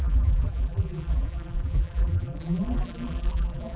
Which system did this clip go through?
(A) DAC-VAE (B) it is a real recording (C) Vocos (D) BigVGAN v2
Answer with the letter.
D